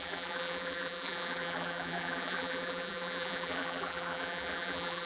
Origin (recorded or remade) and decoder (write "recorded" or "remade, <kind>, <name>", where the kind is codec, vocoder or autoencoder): remade, vocoder, BigVGAN v2